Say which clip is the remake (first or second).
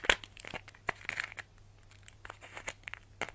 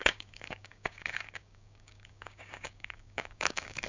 second